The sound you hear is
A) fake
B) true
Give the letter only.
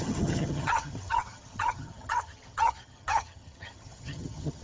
A